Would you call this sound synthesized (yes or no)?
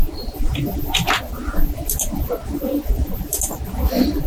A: no